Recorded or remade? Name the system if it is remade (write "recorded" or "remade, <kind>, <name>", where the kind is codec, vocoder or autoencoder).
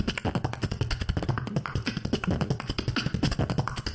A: recorded